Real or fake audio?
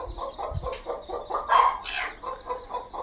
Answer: real